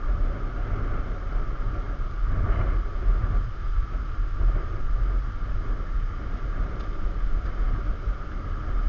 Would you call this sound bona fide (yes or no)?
yes